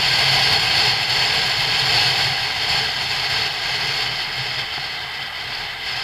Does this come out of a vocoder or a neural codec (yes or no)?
no